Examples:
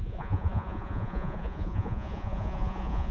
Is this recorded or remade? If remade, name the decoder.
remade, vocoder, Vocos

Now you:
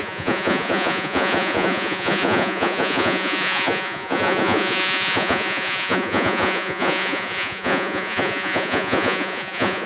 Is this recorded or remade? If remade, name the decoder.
remade, vocoder, Vocos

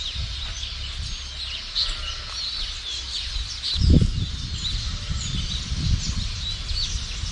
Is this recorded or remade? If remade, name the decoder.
recorded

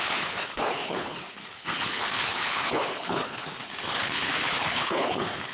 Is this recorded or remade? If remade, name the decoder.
remade, codec, HILCodec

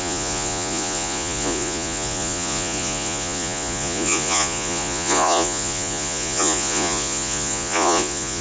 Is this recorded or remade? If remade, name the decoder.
remade, vocoder, Vocos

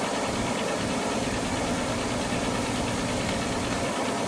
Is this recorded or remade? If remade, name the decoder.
recorded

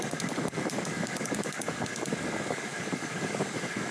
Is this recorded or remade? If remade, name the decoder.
remade, codec, DAC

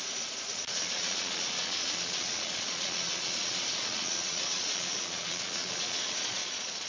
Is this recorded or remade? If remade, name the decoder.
remade, vocoder, Vocos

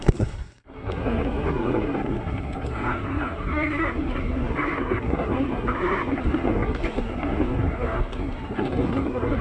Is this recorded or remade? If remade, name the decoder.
remade, codec, SNAC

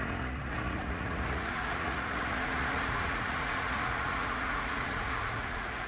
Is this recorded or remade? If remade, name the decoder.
remade, vocoder, Vocos